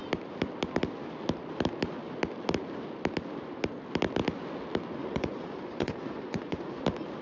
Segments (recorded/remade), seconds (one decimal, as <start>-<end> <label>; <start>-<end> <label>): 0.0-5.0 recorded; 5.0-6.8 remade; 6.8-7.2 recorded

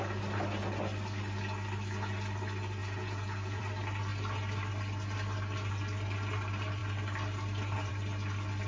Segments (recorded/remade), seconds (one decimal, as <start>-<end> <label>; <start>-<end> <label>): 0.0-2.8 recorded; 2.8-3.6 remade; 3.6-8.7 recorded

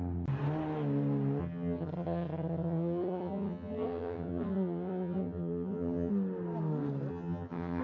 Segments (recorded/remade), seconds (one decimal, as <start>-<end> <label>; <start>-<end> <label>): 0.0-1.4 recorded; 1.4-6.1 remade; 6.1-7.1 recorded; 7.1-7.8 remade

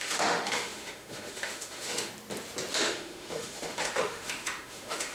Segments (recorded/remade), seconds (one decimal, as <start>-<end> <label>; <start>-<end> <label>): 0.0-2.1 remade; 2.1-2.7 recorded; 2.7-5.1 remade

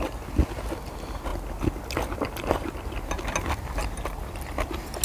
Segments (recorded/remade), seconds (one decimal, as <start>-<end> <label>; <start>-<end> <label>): 0.0-5.0 recorded